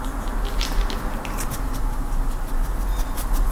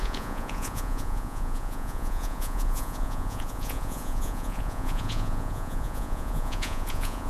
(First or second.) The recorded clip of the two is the first